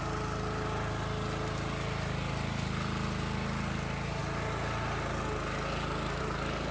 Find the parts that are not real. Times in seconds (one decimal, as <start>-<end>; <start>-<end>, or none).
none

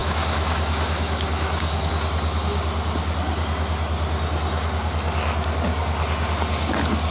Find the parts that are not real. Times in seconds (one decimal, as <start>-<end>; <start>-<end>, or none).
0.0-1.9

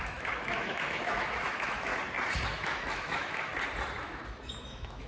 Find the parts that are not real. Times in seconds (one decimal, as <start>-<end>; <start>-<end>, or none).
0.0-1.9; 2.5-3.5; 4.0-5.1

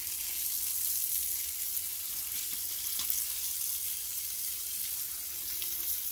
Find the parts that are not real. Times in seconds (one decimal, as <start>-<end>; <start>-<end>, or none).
none

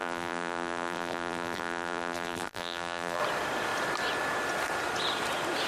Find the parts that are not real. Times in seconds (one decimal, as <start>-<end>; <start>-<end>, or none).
0.0-3.2